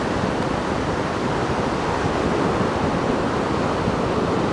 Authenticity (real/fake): real